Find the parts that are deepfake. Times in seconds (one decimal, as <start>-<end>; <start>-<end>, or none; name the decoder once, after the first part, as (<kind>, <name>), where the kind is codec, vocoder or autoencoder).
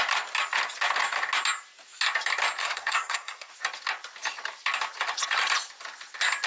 2.6-3.5 (codec, SNAC)